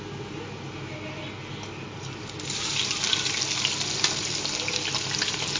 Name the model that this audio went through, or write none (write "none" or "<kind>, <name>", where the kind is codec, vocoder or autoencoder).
none